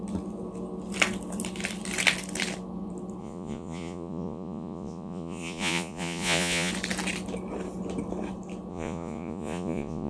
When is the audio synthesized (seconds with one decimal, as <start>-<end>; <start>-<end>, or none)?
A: 3.2-6.7; 8.7-10.1

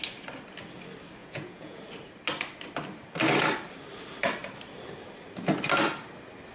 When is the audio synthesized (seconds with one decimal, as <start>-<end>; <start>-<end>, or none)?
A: 1.2-1.8

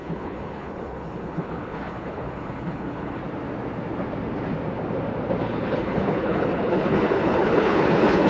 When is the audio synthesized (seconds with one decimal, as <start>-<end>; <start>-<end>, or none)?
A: 0.0-3.2; 5.4-8.3

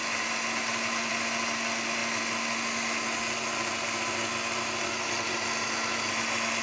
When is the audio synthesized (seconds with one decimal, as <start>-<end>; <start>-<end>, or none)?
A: none

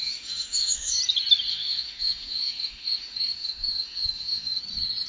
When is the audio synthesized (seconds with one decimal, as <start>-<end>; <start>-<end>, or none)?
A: 0.0-1.0; 1.5-4.6

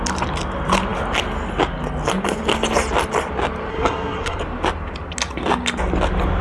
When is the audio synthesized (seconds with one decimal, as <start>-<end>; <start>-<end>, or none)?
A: 3.7-4.4